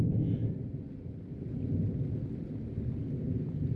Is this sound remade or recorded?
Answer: recorded